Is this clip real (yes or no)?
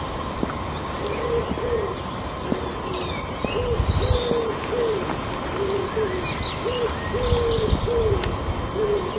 yes